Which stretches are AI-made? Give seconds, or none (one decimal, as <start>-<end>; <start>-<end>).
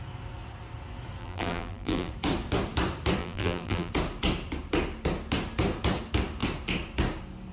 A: 1.2-2.1; 3.2-3.9